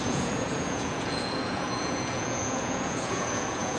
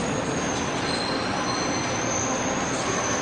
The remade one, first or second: first